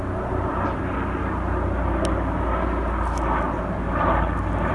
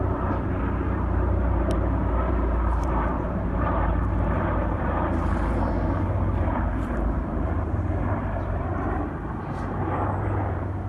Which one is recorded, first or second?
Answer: first